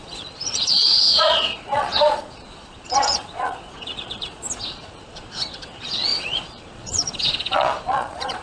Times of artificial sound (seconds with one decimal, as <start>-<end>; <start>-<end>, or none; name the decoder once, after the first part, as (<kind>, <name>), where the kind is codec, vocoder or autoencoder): 0.0-8.4 (vocoder, Vocos)